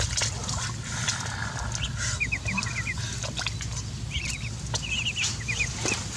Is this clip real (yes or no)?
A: yes